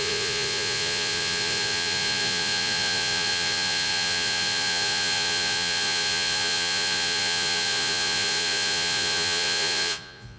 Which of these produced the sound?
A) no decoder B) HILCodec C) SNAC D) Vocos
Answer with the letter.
D